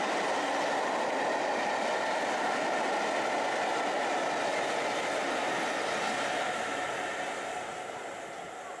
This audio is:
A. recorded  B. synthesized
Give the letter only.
A